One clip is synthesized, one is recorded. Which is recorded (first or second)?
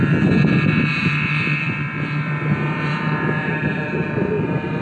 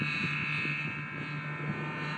second